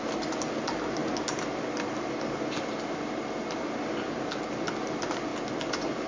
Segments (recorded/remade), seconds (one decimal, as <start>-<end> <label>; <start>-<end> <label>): 0.0-6.1 recorded